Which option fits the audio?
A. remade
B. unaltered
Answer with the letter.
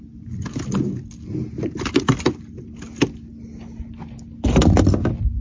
B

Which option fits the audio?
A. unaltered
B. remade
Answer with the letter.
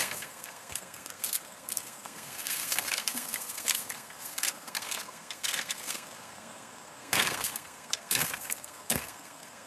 B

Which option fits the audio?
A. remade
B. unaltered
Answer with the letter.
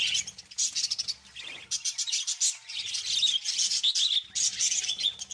B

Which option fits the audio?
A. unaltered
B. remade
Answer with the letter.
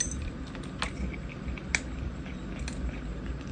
A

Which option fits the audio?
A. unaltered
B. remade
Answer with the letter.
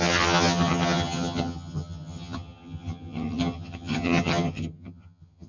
B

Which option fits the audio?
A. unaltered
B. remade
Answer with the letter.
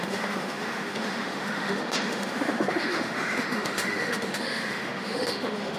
B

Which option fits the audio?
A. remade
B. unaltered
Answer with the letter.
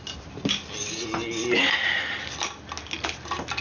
B